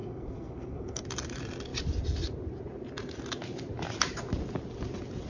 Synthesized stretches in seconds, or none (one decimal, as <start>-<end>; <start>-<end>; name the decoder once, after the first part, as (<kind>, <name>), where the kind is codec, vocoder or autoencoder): 0.0-1.0 (codec, SNAC)